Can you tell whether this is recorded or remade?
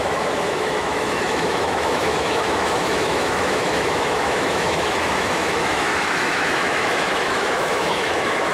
remade